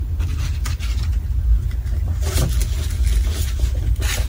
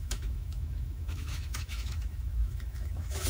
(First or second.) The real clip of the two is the first